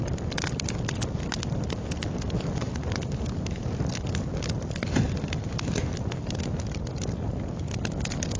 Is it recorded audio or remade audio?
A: recorded